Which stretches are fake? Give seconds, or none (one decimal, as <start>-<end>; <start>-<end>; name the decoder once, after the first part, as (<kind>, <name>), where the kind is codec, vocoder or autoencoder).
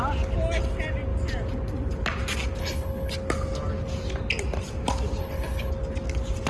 2.6-3.1 (codec, HILCodec); 5.2-5.7